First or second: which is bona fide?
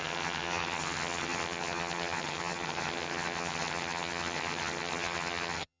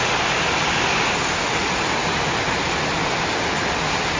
second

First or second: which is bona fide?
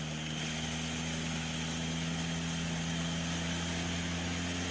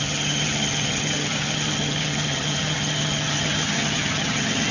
first